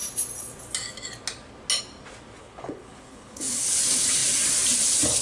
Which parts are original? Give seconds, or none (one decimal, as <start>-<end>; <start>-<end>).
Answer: 0.0-2.4; 3.8-5.2